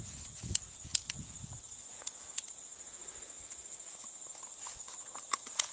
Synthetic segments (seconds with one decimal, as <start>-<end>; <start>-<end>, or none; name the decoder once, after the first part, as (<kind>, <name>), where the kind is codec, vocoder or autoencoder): 0.0-4.3 (vocoder, Vocos); 5.3-5.7